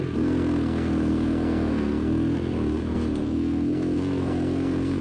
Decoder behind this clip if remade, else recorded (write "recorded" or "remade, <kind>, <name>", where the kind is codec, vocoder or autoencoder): remade, codec, SNAC